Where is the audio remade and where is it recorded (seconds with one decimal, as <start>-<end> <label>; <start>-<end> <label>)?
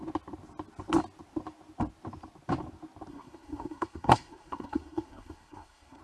0.0-3.1 recorded; 3.1-6.0 remade